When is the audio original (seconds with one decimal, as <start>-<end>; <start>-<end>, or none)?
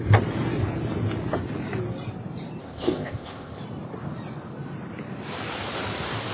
0.0-2.6; 3.6-6.3